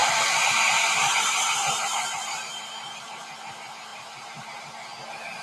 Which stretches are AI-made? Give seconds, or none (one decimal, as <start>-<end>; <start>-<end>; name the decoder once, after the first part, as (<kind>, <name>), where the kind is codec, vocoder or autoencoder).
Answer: 0.0-3.2 (vocoder, BigVGAN v2); 3.9-4.6